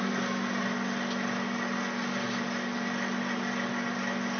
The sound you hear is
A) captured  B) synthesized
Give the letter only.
A